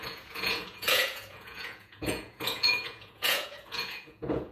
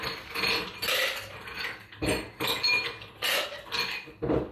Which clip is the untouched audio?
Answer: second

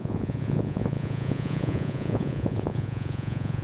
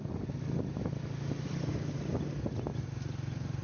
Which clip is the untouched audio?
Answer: second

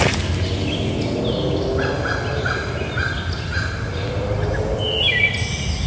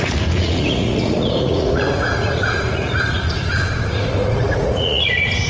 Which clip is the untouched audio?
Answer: first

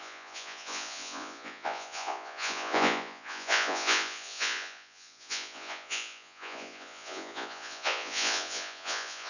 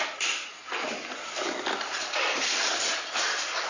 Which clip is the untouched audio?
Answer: second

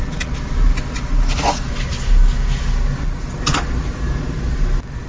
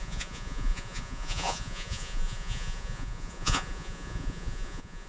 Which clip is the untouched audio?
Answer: first